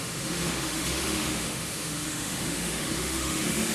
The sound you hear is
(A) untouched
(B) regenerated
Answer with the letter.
B